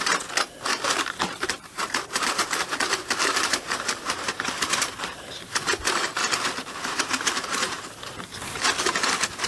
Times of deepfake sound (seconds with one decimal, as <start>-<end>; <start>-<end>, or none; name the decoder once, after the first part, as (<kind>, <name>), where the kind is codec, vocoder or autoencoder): 0.7-4.7 (vocoder, BigVGAN v2); 6.2-8.0